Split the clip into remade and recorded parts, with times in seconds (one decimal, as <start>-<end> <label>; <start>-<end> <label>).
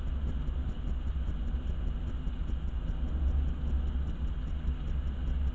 0.0-5.5 recorded